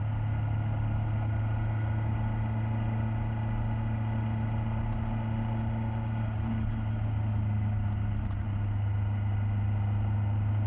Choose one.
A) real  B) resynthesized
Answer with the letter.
A